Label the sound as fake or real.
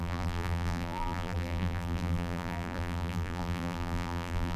fake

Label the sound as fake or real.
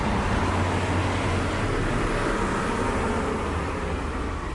real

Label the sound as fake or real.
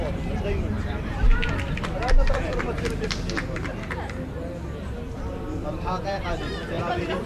fake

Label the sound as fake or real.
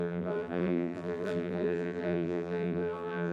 fake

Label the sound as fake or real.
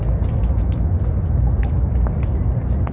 real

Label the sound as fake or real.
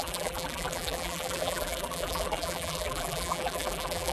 fake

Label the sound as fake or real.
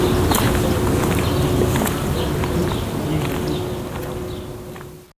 real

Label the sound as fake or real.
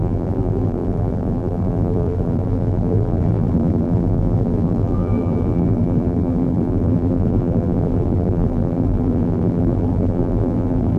fake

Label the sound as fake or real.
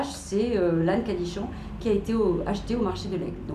real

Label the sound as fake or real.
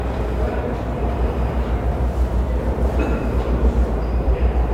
fake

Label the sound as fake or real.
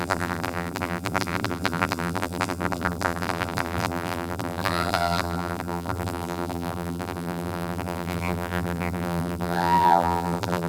fake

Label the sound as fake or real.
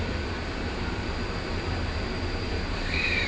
fake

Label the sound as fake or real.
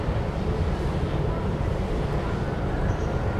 fake